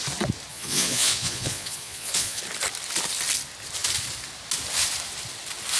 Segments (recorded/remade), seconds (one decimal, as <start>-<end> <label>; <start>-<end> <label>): 0.0-0.5 recorded; 0.5-2.4 remade; 2.4-5.8 recorded